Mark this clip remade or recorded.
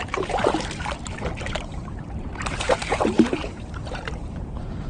remade